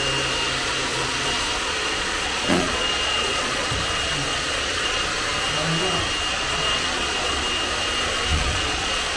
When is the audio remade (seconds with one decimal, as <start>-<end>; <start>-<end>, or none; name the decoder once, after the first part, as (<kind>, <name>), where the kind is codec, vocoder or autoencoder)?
0.9-3.8 (vocoder, Vocos); 4.3-5.0; 6.3-7.4; 8.3-9.2